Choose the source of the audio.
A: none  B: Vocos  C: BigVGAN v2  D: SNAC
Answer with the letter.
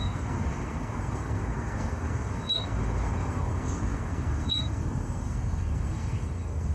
D